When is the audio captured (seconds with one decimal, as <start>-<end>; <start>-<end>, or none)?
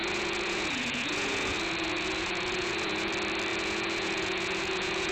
3.1-3.5